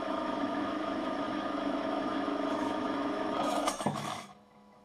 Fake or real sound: fake